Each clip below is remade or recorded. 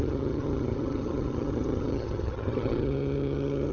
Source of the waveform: remade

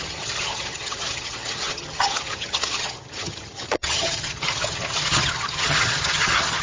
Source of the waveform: remade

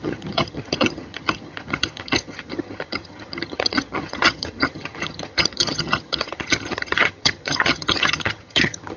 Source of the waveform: remade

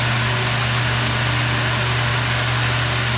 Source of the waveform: recorded